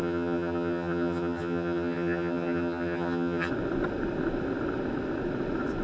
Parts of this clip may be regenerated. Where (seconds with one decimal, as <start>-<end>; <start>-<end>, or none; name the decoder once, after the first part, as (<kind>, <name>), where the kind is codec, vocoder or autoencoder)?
0.0-3.5 (vocoder, HiFi-GAN)